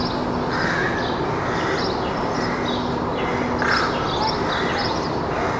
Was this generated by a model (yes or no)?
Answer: no